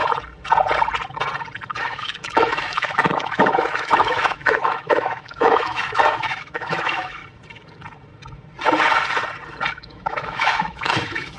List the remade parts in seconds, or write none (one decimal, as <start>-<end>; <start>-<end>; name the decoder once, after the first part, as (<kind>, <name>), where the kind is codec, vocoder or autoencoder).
1.8-7.2 (autoencoder, DAC-VAE); 9.7-11.4